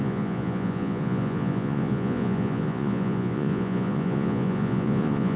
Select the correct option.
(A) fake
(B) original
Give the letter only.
A